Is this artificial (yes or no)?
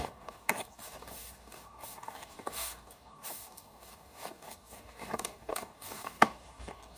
yes